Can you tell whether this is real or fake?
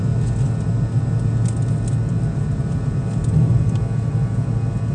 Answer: real